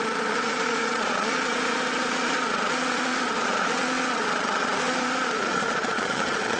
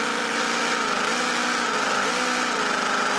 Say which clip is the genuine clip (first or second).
second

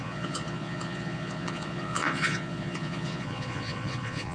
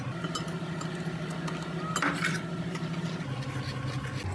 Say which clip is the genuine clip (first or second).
second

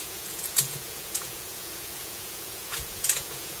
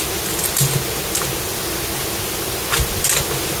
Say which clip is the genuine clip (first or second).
second